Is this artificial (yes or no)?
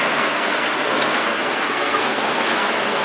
yes